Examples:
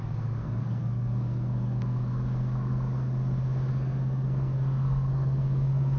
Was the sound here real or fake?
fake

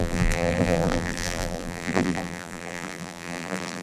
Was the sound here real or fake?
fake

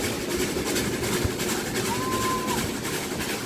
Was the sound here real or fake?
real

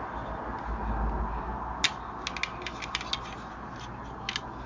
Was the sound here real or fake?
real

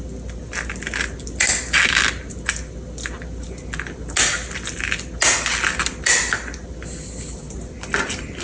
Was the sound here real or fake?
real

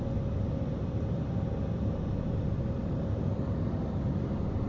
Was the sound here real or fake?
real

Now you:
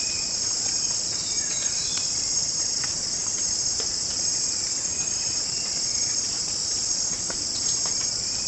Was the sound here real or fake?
fake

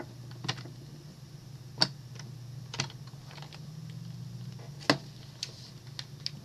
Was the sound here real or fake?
real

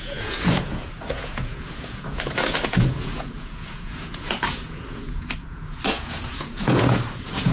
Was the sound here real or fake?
fake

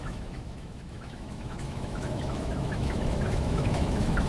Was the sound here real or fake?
fake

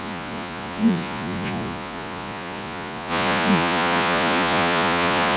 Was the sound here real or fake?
fake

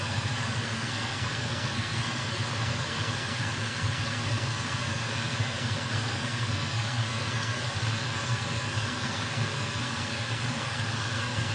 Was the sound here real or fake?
fake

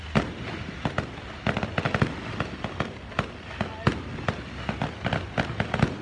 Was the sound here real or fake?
real